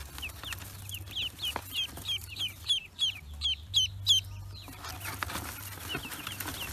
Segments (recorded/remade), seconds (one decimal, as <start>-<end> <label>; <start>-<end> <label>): 0.0-6.7 recorded